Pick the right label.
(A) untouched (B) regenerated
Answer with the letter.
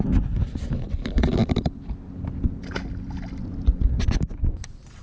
A